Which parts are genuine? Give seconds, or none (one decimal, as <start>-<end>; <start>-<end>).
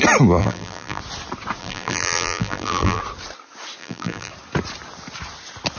0.0-0.4; 1.0-1.6; 3.0-3.8; 4.3-5.8